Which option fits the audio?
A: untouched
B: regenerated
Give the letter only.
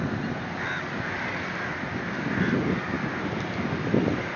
A